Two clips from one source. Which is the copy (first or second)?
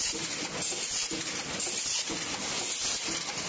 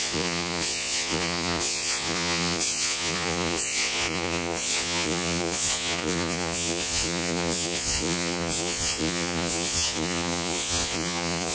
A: second